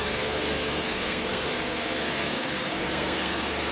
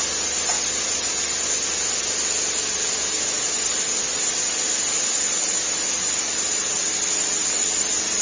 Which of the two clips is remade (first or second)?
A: first